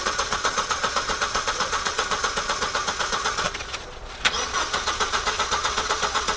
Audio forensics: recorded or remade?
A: remade